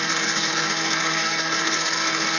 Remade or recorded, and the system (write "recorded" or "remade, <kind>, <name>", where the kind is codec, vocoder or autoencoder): remade, codec, SNAC